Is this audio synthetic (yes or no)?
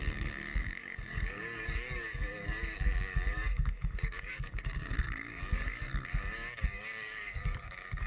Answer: yes